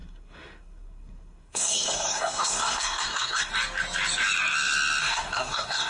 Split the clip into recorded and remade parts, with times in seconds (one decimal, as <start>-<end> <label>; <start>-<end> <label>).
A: 0.0-3.5 remade; 3.5-5.0 recorded; 5.0-5.9 remade